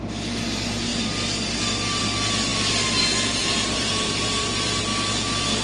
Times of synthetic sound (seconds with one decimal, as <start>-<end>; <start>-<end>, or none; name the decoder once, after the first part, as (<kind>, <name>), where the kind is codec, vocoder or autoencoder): 3.4-4.8 (vocoder, BigVGAN v2)